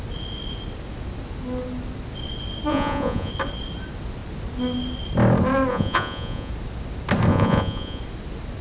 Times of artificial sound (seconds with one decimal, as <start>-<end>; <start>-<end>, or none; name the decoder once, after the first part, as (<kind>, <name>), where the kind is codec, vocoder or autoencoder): 2.7-3.3 (vocoder, Vocos); 5.7-6.5; 7.3-8.0